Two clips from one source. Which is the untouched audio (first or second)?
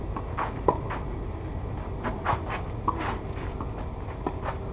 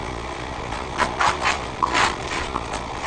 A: first